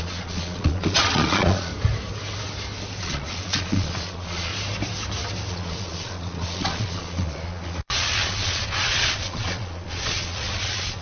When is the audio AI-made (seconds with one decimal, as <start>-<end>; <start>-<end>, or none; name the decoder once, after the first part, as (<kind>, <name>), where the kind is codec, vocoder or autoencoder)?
0.0-1.7 (vocoder, Vocos); 3.0-4.5; 5.5-11.0